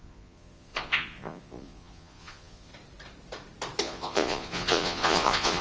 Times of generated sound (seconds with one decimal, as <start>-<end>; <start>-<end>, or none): 0.0-2.7; 3.8-5.6